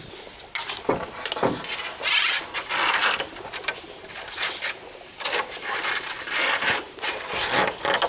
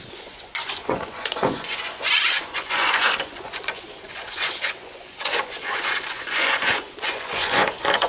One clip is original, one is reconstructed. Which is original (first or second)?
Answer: first